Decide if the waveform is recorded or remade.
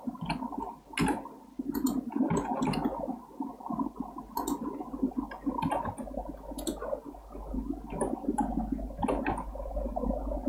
recorded